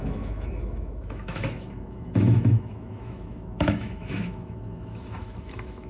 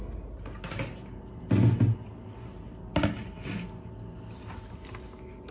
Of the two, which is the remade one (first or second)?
first